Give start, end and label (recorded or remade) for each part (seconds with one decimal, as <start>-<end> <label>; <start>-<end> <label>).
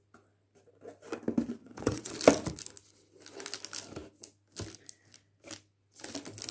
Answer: 0.0-1.6 recorded; 1.6-2.1 remade; 2.1-6.5 recorded